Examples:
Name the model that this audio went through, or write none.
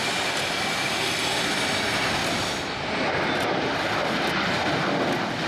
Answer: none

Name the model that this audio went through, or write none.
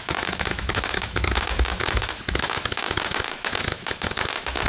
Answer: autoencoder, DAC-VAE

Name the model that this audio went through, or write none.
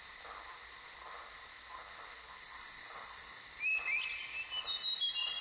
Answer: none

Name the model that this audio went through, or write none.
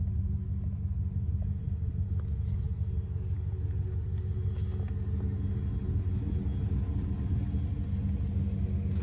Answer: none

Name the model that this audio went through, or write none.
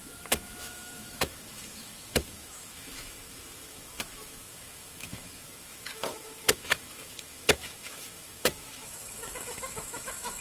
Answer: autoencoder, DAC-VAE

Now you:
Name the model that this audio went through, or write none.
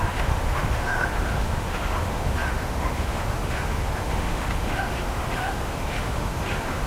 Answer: autoencoder, DAC-VAE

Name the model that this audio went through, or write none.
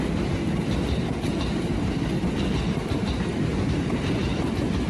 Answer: none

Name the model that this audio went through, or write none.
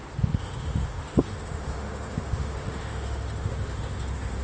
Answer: autoencoder, DAC-VAE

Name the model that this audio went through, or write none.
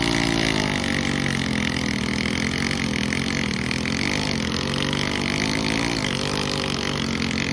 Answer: none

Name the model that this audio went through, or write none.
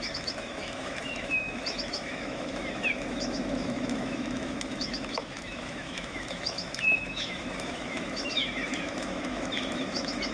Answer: autoencoder, DAC-VAE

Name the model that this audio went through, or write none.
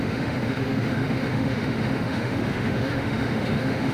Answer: autoencoder, DAC-VAE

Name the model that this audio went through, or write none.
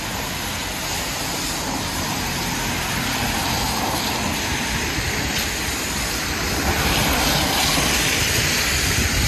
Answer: none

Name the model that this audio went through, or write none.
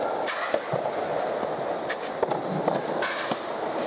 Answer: none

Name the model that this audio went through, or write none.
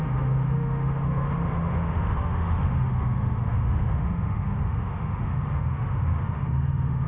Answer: autoencoder, DAC-VAE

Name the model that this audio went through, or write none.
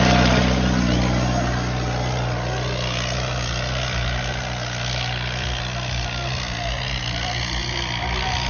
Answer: none